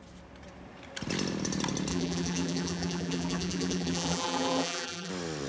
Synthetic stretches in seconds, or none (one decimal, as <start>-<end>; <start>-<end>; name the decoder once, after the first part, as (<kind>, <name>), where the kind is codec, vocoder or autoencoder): 1.9-5.1 (vocoder, BigVGAN v2)

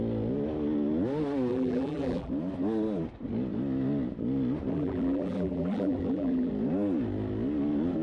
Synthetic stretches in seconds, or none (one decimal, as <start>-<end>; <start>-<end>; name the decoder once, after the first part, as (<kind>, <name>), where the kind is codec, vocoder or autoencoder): 1.5-2.3 (vocoder, BigVGAN v2); 4.7-6.5

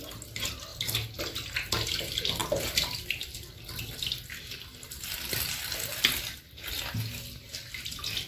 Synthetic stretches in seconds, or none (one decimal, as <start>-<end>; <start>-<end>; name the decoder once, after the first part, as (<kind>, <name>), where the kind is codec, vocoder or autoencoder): none

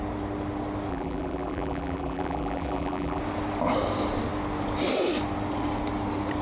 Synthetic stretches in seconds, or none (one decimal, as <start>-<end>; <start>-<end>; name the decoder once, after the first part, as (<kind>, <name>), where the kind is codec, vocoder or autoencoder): 0.9-3.2 (vocoder, BigVGAN v2)

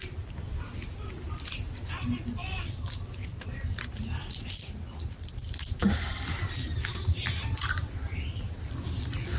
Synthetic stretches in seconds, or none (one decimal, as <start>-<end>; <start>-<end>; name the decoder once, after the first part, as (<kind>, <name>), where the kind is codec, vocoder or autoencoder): 3.2-4.7 (vocoder, BigVGAN v2)

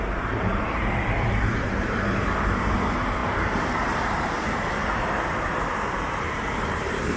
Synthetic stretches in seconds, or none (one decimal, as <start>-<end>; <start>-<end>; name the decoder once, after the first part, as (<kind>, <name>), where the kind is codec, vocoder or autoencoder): 0.0-7.2 (vocoder, BigVGAN v2)

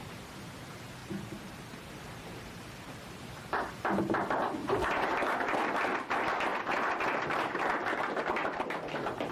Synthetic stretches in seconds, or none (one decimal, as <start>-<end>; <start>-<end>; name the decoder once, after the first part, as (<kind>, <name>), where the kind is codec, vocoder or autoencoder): 1.0-3.1 (vocoder, BigVGAN v2); 4.6-5.1; 6.5-7.6

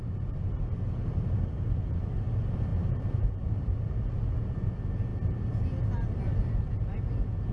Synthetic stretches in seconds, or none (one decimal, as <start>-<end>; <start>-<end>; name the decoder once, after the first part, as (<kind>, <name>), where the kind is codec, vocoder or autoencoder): 2.7-3.6 (vocoder, BigVGAN v2)